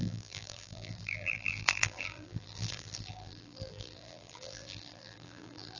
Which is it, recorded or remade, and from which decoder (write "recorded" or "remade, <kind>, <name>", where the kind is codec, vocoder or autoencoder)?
remade, vocoder, BigVGAN v2